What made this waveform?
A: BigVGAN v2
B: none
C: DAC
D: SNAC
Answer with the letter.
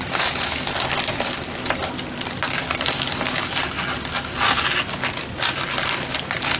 B